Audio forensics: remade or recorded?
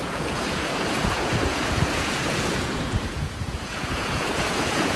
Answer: remade